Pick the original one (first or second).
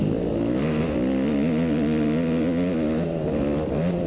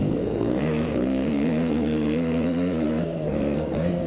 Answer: first